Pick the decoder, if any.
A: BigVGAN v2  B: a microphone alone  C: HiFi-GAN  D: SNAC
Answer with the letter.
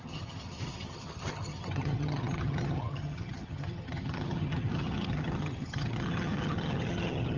C